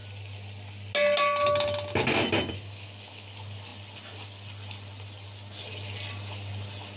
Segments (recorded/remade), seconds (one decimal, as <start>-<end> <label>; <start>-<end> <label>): 0.0-7.0 recorded